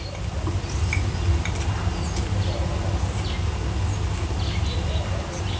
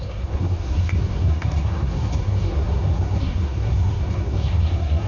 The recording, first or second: first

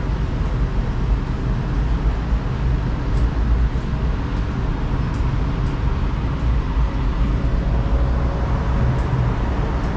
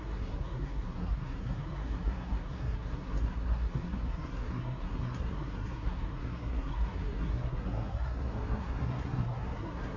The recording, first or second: first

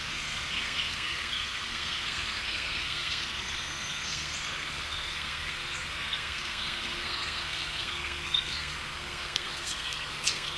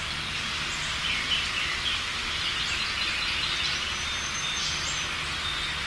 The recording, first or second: second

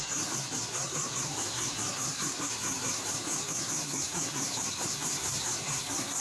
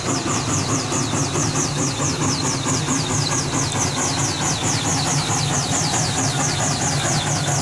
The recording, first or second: second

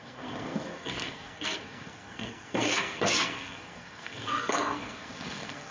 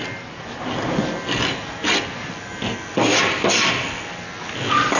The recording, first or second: second